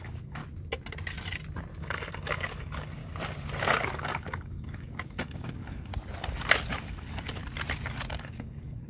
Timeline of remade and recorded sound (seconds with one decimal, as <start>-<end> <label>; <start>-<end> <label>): 0.0-0.4 remade; 0.4-1.8 recorded; 1.8-3.0 remade; 3.0-3.6 recorded; 3.6-5.9 remade; 5.9-6.7 recorded; 6.7-7.4 remade; 7.4-8.1 recorded; 8.1-8.9 remade